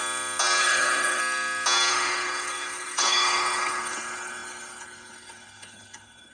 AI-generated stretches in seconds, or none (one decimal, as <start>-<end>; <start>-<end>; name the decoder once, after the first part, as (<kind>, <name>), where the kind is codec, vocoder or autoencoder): 0.6-1.2 (codec, HILCodec); 1.9-6.3